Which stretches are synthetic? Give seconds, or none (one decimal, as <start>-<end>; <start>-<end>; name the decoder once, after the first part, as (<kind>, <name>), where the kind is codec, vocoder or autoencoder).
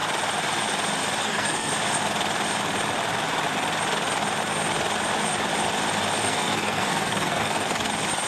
1.2-1.7 (codec, SNAC); 6.2-7.9